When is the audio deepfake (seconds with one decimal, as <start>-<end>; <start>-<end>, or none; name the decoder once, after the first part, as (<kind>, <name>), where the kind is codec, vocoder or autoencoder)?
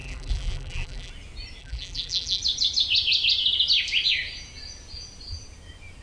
0.0-1.1 (vocoder, BigVGAN v2); 1.6-2.4